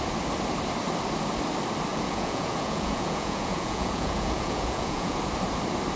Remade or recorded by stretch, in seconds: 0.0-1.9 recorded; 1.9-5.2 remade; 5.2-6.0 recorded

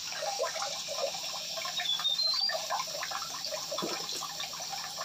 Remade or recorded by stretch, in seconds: 0.0-0.6 remade; 0.6-5.0 recorded

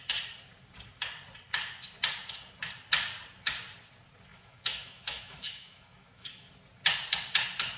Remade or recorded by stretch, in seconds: 0.0-4.3 recorded; 4.3-6.5 remade; 6.5-7.8 recorded

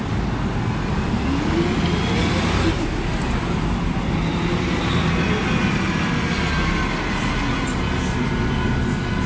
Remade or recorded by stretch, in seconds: 0.0-4.3 recorded; 4.3-4.9 remade; 4.9-9.3 recorded

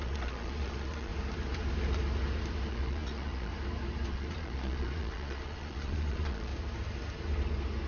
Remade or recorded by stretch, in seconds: 0.0-1.1 remade; 1.1-2.7 recorded; 2.7-3.5 remade; 3.5-4.1 recorded; 4.1-6.5 remade; 6.5-7.9 recorded